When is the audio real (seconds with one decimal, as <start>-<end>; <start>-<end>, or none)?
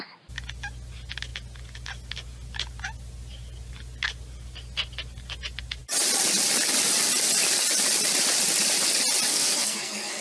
0.0-9.3